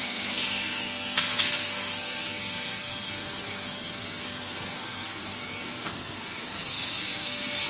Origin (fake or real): fake